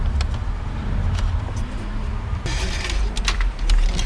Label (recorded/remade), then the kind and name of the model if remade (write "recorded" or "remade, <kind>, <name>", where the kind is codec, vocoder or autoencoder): recorded